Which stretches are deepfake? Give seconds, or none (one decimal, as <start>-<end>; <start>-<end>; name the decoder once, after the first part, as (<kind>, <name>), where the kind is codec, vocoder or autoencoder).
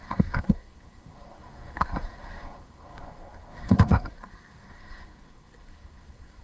0.0-6.4 (codec, SNAC)